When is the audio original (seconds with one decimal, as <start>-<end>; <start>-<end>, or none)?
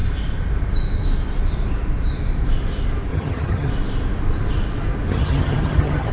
0.0-3.1; 3.7-5.1